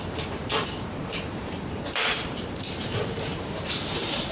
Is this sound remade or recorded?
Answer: remade